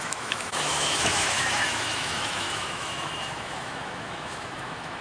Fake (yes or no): yes